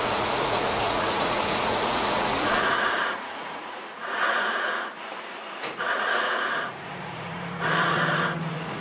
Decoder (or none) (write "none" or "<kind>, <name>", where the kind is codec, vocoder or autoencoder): vocoder, Vocos